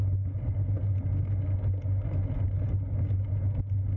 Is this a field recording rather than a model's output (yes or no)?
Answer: yes